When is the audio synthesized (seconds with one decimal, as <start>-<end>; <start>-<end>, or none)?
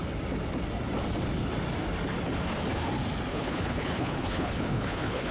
3.3-5.3